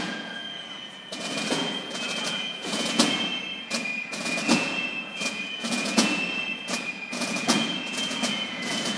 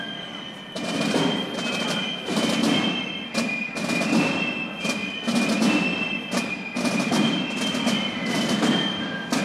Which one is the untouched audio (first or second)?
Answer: second